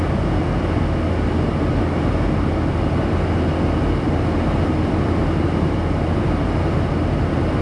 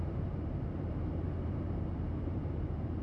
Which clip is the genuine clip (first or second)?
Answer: first